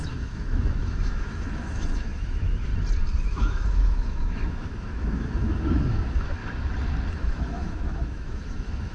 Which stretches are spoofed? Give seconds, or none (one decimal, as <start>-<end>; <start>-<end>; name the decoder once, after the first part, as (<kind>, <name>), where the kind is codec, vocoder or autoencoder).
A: 0.0-2.7 (autoencoder, DAC-VAE); 3.2-6.4; 7.1-8.9